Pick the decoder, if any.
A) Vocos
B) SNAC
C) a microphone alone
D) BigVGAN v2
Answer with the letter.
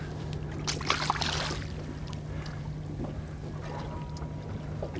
C